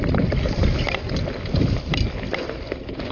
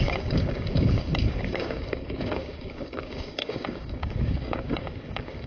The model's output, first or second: second